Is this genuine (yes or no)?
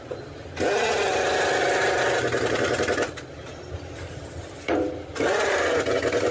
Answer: yes